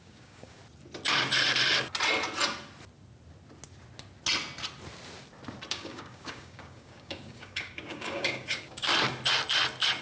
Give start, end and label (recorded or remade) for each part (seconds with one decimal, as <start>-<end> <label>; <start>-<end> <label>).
0.0-0.6 remade; 0.6-5.7 recorded; 5.7-8.9 remade; 8.9-10.0 recorded